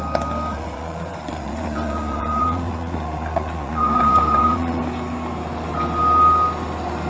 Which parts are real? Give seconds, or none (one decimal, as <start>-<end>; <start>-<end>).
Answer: 0.0-0.5; 4.8-7.1

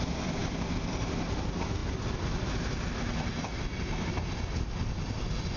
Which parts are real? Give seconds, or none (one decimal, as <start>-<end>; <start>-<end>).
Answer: 0.0-5.6

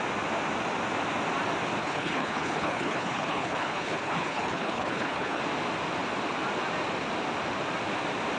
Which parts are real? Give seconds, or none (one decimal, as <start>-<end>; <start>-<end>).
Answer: 0.0-1.8; 5.4-8.4

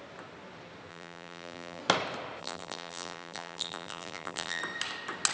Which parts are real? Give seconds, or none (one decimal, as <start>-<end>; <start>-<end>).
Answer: 0.0-0.9; 1.8-2.4; 4.6-5.3

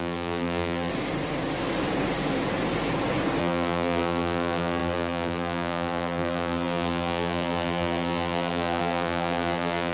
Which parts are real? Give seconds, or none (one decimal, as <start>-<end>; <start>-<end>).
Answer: 0.9-3.4

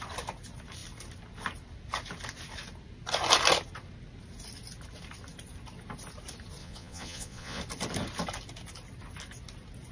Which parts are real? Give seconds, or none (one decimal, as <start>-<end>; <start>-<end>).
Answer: 0.0-6.6; 7.6-9.9

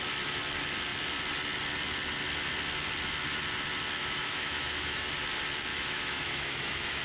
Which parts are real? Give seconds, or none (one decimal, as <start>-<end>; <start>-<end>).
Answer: 0.0-4.0; 5.1-5.7

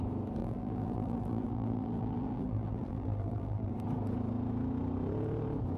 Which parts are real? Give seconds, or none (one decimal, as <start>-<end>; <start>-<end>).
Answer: 0.0-0.4; 3.7-5.8